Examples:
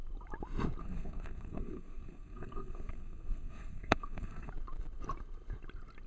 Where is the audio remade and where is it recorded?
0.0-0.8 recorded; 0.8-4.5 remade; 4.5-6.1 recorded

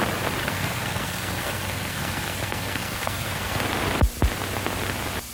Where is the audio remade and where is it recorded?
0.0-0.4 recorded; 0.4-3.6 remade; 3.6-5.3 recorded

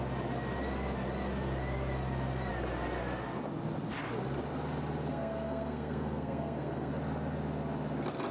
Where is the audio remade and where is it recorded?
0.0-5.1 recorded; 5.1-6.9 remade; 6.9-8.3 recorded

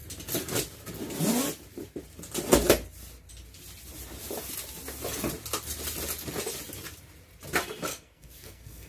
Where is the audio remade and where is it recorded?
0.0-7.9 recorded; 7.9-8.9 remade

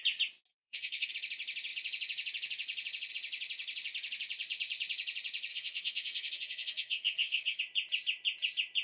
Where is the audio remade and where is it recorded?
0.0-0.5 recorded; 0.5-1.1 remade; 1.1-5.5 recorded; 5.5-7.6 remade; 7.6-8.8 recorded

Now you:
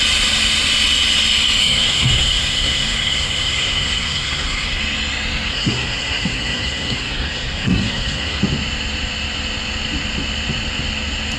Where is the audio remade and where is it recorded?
0.0-1.6 recorded; 1.6-4.8 remade; 4.8-5.5 recorded; 5.5-8.4 remade; 8.4-11.4 recorded

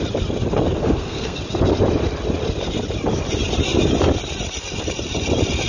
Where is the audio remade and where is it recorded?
0.0-0.8 recorded; 0.8-1.4 remade; 1.4-5.7 recorded

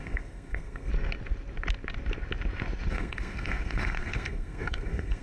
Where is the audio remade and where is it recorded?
0.0-0.9 remade; 0.9-2.9 recorded; 2.9-5.2 remade